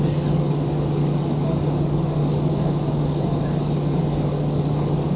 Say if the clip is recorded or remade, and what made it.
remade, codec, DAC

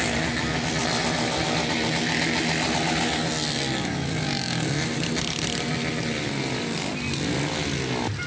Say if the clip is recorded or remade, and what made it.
recorded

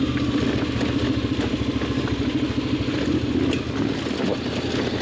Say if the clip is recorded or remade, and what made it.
recorded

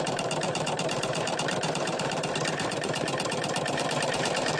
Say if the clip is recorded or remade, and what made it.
remade, vocoder, BigVGAN v2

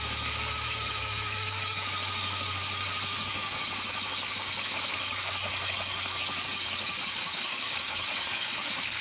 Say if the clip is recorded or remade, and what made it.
remade, codec, DAC